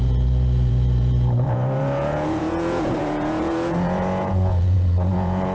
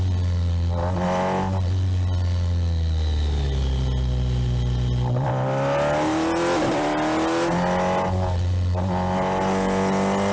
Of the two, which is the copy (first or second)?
first